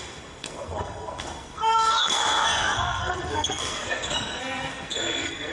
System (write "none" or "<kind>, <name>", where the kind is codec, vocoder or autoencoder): codec, SNAC